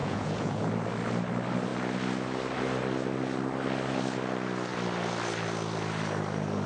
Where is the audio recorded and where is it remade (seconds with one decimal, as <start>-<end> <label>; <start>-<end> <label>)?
0.0-0.6 remade; 0.6-6.7 recorded